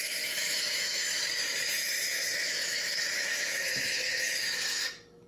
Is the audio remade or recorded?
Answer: remade